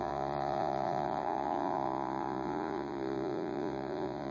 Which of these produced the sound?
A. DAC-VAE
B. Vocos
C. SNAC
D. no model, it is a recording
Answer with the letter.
B